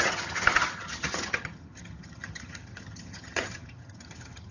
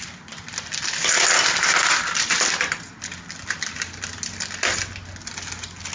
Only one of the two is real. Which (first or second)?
second